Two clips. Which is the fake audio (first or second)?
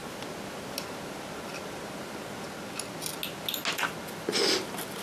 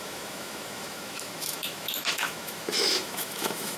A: second